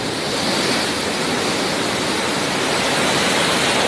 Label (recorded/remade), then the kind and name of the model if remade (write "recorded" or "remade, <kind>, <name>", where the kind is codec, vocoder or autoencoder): recorded